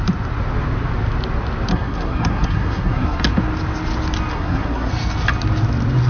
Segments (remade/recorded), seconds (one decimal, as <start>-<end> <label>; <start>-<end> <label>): 0.0-1.7 recorded; 1.7-3.2 remade; 3.2-4.3 recorded; 4.3-4.9 remade; 4.9-6.1 recorded